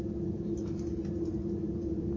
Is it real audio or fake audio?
real